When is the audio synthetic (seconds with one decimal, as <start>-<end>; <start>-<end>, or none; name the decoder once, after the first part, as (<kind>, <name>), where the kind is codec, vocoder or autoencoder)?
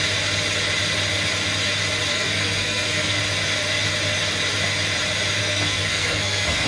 2.1-3.2 (codec, SNAC); 5.4-6.7